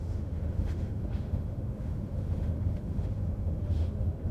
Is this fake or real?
fake